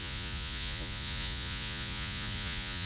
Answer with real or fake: fake